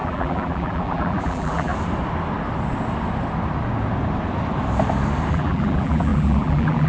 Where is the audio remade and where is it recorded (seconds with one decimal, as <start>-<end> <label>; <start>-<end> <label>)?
0.0-1.7 remade; 1.7-5.3 recorded; 5.3-6.9 remade